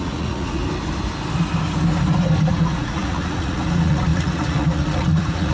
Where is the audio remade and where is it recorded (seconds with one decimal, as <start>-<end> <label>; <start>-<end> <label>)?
0.0-0.6 remade; 0.6-2.5 recorded; 2.5-5.5 remade

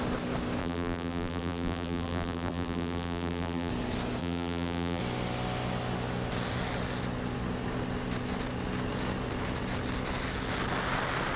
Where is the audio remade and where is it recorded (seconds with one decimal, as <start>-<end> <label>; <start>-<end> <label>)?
0.0-0.6 recorded; 0.6-3.7 remade; 3.7-4.2 recorded; 4.2-5.0 remade; 5.0-11.4 recorded